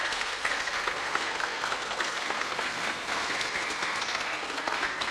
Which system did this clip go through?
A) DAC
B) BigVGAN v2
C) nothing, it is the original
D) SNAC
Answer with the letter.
D